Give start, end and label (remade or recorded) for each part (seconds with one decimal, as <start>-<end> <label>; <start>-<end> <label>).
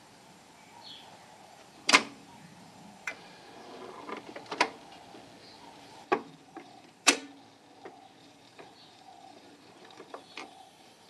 0.0-3.1 remade; 3.1-5.8 recorded; 5.8-7.2 remade; 7.2-8.2 recorded; 8.2-11.1 remade